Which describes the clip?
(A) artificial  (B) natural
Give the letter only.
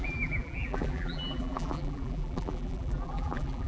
A